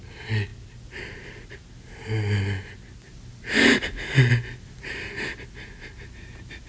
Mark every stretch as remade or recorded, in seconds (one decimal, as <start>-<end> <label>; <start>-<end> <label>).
0.0-6.7 recorded